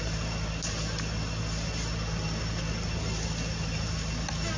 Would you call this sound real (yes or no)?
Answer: yes